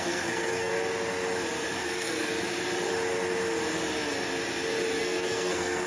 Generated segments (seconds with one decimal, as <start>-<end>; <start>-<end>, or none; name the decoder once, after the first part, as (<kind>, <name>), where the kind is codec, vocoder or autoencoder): 0.0-0.7 (codec, SNAC); 1.8-2.3; 5.0-5.9